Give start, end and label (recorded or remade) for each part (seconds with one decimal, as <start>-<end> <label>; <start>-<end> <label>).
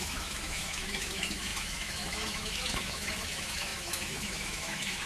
0.0-5.1 remade